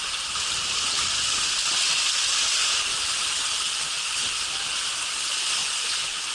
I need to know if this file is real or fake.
real